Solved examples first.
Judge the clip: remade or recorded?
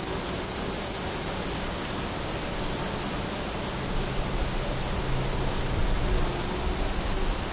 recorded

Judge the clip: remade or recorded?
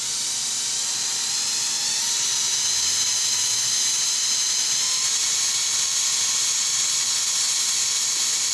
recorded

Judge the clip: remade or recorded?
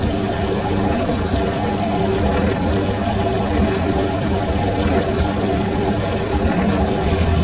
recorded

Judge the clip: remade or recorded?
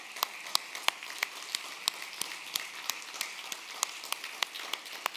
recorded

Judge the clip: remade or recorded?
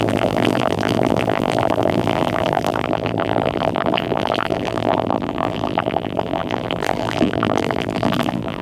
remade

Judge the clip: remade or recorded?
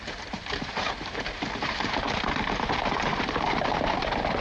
remade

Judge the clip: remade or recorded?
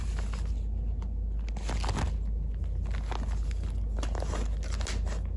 recorded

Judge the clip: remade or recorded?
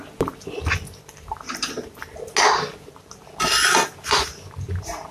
recorded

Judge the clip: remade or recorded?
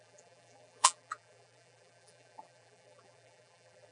remade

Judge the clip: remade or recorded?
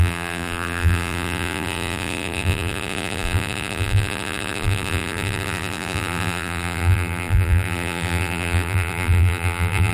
remade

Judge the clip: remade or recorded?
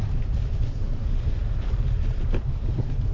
remade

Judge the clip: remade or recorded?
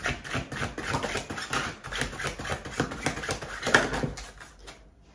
recorded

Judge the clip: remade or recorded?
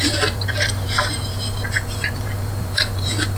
remade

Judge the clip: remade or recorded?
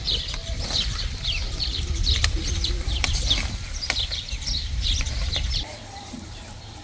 remade